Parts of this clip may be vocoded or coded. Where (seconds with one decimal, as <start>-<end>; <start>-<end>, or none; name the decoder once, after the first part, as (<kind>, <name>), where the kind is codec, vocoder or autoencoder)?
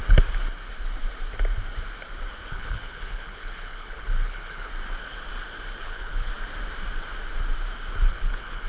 2.5-4.7 (codec, HILCodec); 5.8-6.3; 8.1-8.7